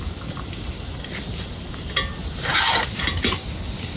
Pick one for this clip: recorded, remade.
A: recorded